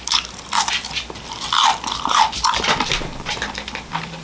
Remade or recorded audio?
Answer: remade